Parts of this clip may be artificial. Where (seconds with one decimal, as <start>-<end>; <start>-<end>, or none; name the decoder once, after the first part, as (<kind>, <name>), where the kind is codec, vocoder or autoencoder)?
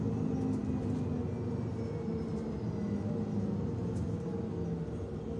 none